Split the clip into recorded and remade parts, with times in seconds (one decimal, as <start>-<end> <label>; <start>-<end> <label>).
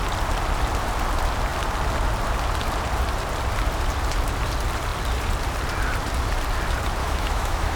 0.0-7.0 recorded; 7.0-7.8 remade